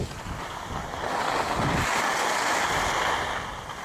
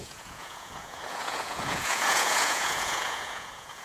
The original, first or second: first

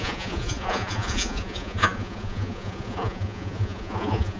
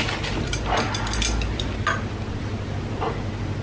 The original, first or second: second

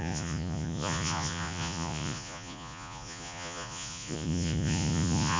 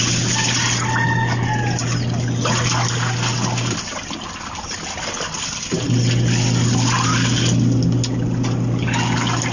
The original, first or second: second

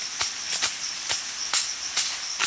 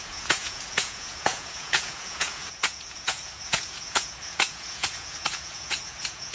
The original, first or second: first